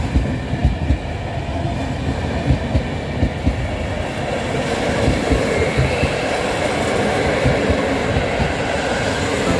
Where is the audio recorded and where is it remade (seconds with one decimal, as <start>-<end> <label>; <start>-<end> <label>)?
0.0-9.6 recorded